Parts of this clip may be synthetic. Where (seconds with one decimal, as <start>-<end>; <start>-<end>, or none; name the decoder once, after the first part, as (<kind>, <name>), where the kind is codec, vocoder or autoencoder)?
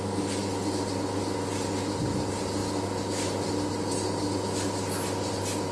none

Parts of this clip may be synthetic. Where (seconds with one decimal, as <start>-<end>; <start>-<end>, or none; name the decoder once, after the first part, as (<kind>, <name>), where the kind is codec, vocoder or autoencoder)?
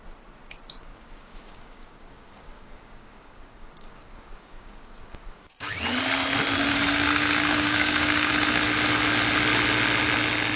0.9-5.8 (codec, DAC); 6.7-8.3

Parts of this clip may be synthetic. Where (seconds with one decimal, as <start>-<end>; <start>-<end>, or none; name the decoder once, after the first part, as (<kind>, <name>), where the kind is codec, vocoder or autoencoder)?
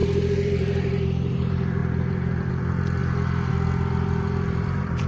0.0-5.1 (vocoder, BigVGAN v2)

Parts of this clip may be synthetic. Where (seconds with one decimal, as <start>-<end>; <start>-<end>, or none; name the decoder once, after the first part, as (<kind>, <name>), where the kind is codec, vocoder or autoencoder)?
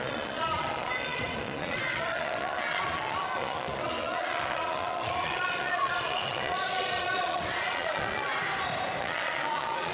0.0-8.3 (vocoder, Vocos); 9.0-9.9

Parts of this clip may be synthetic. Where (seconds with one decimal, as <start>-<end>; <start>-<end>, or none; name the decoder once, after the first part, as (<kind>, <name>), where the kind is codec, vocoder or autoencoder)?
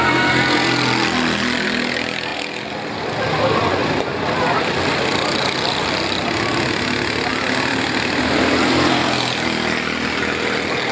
7.3-8.6 (vocoder, BigVGAN v2)